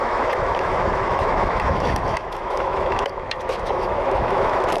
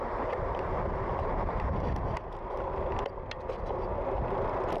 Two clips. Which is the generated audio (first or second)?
first